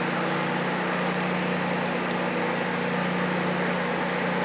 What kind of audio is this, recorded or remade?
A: recorded